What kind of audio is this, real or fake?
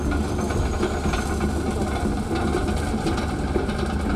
real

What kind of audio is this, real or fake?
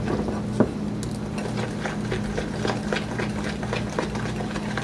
real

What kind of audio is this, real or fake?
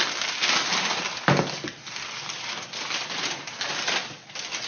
real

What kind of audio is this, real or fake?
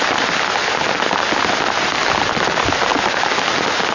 real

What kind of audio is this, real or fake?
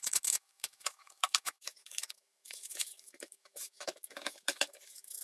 fake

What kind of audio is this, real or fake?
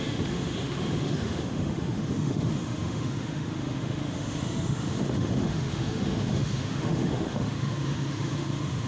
fake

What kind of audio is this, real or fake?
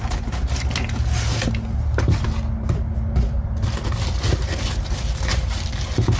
real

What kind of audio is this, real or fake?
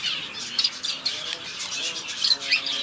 fake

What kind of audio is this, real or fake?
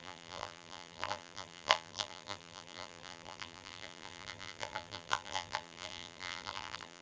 fake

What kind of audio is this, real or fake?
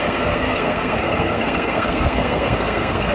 fake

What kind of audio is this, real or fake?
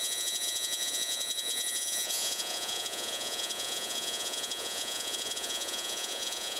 fake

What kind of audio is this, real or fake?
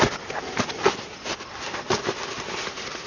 real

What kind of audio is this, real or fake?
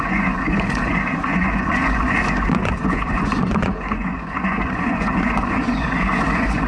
fake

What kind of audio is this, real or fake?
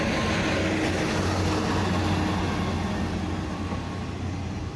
real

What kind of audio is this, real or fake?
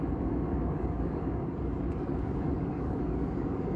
fake